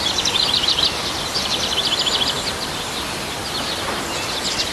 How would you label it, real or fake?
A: real